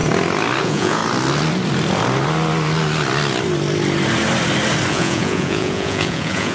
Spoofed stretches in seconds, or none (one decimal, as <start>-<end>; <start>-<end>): 0.6-1.0; 4.9-6.5